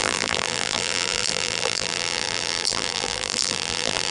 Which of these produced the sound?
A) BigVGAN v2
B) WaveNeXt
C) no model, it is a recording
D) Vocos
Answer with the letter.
A